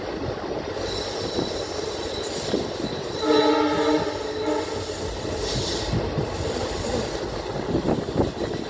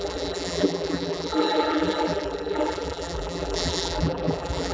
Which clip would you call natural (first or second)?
first